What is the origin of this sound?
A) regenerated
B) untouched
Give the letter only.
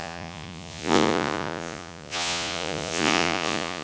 A